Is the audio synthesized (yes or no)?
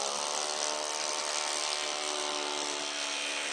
no